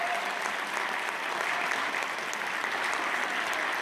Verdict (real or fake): real